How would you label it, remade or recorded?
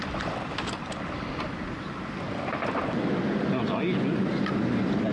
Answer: recorded